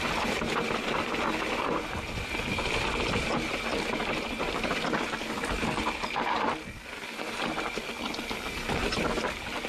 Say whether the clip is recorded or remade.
recorded